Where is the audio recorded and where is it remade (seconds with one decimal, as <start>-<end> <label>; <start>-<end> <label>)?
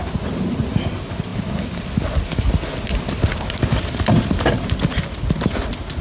0.0-6.0 recorded